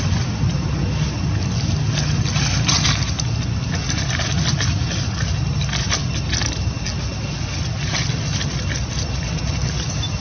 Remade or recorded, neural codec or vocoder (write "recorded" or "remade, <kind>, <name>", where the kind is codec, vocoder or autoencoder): recorded